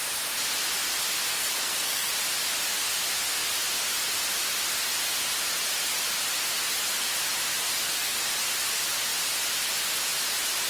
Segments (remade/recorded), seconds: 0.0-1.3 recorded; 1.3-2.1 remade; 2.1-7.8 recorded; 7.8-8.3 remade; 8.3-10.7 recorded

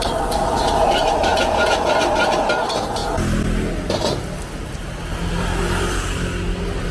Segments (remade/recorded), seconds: 0.0-1.3 recorded; 1.3-1.9 remade; 1.9-6.9 recorded

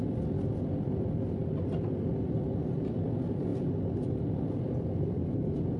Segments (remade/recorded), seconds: 0.0-5.8 recorded

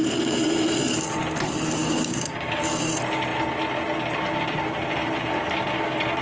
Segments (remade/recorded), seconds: 0.0-1.8 recorded; 1.8-2.6 remade; 2.6-6.2 recorded